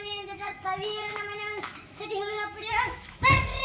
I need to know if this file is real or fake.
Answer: fake